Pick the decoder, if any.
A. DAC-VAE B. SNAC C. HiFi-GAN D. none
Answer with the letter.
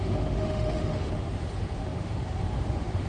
A